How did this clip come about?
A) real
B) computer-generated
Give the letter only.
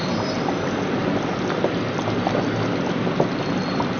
A